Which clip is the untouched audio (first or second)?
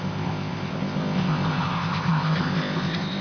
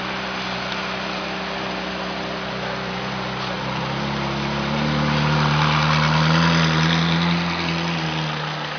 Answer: second